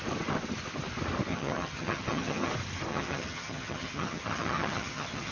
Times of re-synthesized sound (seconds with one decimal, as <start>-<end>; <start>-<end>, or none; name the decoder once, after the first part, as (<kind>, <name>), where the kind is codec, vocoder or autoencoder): 1.3-2.5 (vocoder, HiFi-GAN); 2.9-5.3